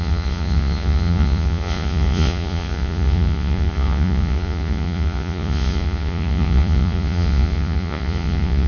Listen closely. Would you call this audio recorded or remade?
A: remade